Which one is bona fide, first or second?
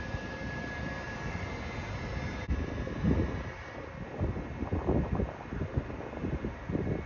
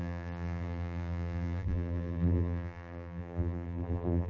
first